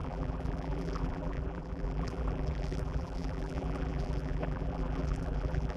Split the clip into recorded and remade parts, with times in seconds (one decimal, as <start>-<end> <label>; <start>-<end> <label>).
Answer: 0.0-5.8 remade